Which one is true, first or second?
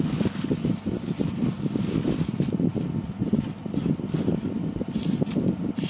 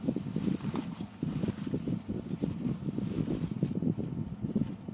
first